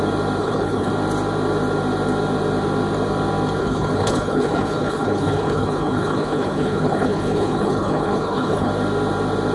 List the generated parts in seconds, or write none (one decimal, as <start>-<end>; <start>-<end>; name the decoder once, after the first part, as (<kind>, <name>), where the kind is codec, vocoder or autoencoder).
0.4-0.9 (codec, HILCodec); 3.6-8.7